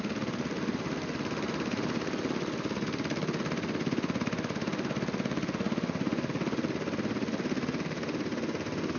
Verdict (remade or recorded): recorded